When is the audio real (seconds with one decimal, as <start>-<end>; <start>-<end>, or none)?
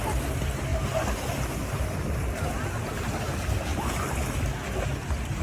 0.0-5.4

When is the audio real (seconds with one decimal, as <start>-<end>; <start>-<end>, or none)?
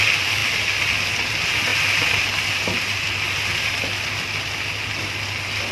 0.0-1.7; 5.1-5.7